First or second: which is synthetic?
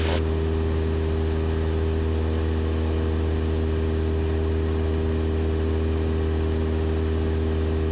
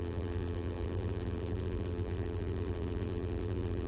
second